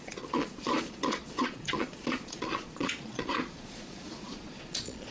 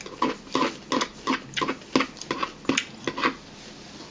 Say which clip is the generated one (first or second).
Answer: first